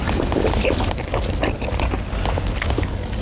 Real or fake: real